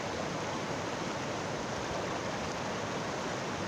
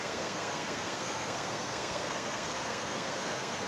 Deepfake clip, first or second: second